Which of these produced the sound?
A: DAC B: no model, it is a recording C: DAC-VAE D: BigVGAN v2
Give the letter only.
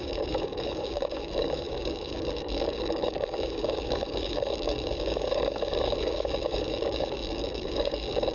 A